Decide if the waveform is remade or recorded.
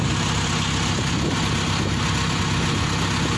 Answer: recorded